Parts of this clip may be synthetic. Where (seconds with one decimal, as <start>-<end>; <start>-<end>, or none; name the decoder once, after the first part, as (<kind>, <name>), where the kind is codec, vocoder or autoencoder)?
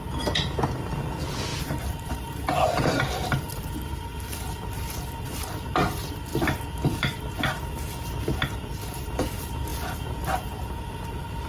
none